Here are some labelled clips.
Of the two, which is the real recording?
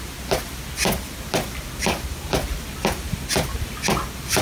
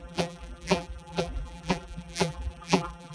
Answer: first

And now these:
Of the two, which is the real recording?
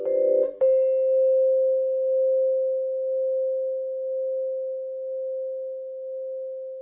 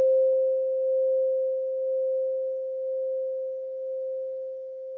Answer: second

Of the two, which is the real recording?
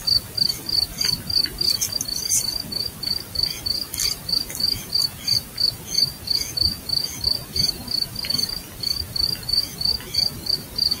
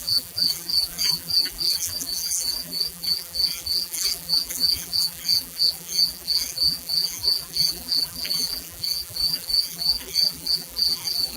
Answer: first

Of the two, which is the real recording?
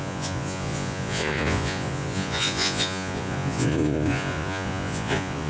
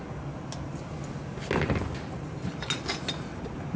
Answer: second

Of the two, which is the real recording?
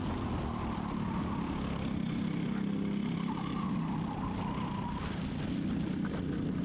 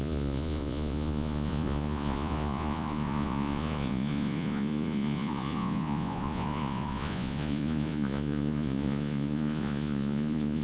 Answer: first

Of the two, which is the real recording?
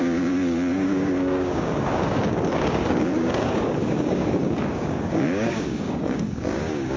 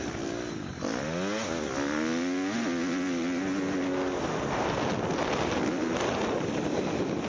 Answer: second